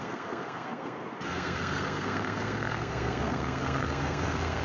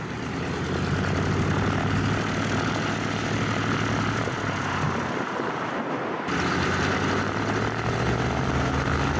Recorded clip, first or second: second